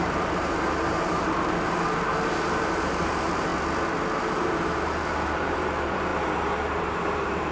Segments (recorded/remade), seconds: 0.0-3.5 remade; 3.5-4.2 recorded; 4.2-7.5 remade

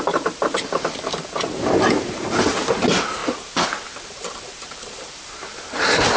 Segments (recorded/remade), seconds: 0.0-3.2 remade; 3.2-4.1 recorded; 4.1-6.2 remade

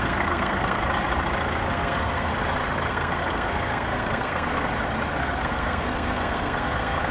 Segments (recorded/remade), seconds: 0.0-0.8 remade; 0.8-1.7 recorded; 1.7-2.3 remade; 2.3-2.9 recorded; 2.9-4.7 remade; 4.7-5.2 recorded; 5.2-7.1 remade

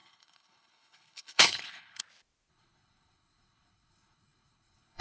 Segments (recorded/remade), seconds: 0.0-2.0 remade; 2.0-2.5 recorded; 2.5-5.0 remade

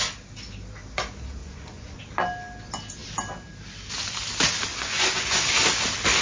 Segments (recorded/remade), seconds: 0.0-1.4 recorded; 1.4-2.0 remade; 2.0-4.7 recorded; 4.7-5.4 remade; 5.4-6.2 recorded

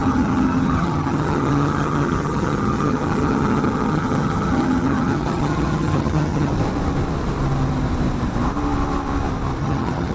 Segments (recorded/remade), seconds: 0.0-6.5 remade; 6.5-9.6 recorded; 9.6-10.1 remade